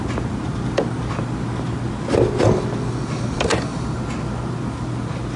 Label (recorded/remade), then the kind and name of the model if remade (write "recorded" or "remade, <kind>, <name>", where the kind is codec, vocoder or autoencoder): recorded